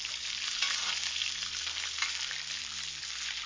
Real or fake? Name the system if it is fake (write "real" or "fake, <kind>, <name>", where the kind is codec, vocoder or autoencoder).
fake, vocoder, BigVGAN v2